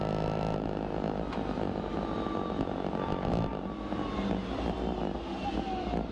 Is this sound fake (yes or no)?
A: no